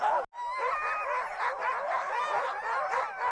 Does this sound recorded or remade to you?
recorded